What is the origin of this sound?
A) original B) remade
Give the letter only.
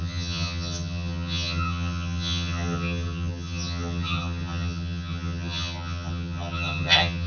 B